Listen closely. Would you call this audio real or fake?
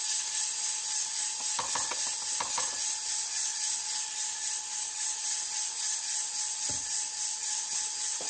real